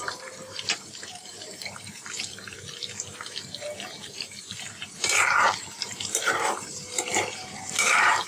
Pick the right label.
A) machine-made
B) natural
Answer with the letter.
A